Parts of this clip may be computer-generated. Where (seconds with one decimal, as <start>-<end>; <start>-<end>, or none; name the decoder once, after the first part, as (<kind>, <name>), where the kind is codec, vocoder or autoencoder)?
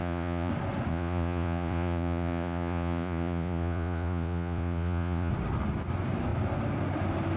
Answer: 0.0-0.5 (vocoder, Vocos); 0.9-5.3